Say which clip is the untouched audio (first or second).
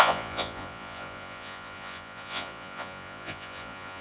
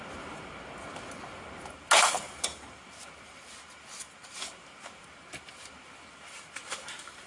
second